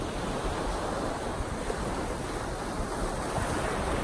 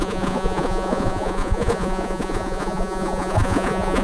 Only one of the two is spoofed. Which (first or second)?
second